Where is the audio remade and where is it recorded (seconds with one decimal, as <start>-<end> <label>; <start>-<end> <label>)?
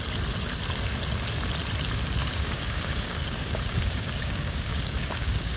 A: 0.0-2.2 recorded; 2.2-5.6 remade